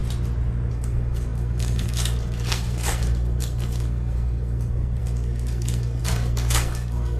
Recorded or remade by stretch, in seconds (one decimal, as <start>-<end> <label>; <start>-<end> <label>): 0.0-0.7 recorded; 0.7-7.2 remade